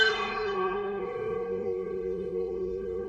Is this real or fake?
fake